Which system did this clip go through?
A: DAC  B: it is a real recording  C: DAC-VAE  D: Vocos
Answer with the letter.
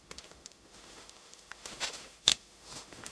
C